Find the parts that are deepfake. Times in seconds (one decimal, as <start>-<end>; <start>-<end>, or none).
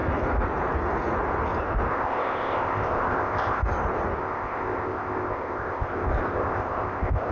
1.9-3.6; 4.2-7.3